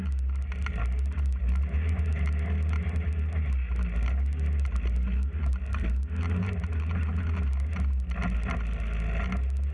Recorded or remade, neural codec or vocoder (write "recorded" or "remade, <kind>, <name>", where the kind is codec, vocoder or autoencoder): recorded